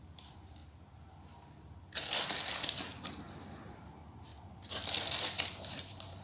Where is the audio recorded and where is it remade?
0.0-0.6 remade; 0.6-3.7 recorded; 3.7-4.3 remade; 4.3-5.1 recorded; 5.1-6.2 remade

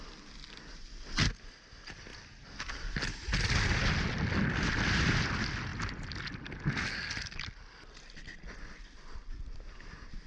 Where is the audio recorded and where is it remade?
0.0-10.3 recorded

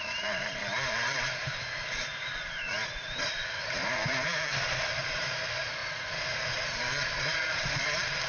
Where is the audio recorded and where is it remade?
0.0-5.8 remade; 5.8-6.7 recorded; 6.7-8.3 remade

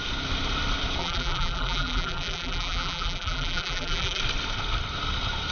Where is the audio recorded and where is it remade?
0.0-1.0 recorded; 1.0-4.2 remade; 4.2-5.5 recorded

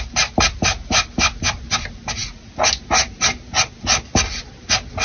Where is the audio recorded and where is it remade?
0.0-5.0 recorded

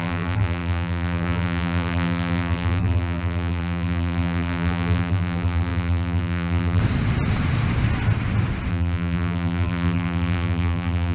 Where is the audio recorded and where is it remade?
0.0-6.8 remade; 6.8-8.7 recorded; 8.7-11.1 remade

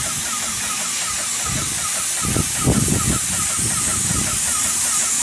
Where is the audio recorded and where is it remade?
0.0-5.2 recorded